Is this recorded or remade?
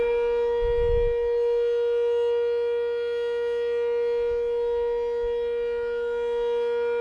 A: recorded